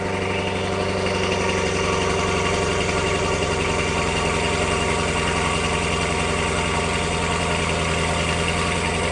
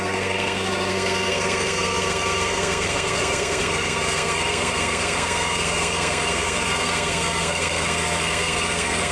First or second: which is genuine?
first